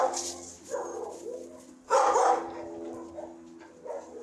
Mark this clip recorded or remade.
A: recorded